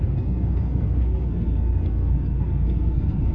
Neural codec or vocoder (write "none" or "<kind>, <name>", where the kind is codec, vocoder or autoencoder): codec, SNAC